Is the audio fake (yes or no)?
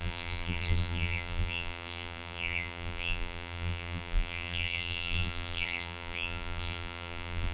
yes